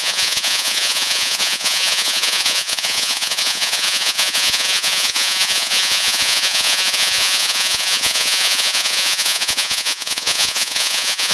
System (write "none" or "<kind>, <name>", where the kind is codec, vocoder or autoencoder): vocoder, Vocos